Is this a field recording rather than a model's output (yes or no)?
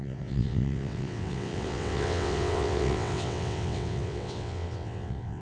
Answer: no